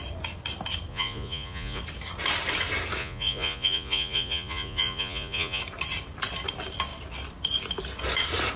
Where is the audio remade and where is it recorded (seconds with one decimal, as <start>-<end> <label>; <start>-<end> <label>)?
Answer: 0.0-0.9 recorded; 0.9-1.8 remade; 1.8-3.0 recorded; 3.0-5.6 remade; 5.6-8.6 recorded